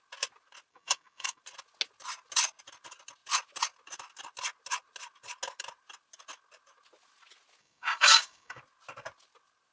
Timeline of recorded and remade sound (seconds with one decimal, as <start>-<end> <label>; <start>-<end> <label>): 0.0-0.7 recorded; 0.7-1.4 remade; 1.4-7.6 recorded; 7.6-8.6 remade; 8.6-9.7 recorded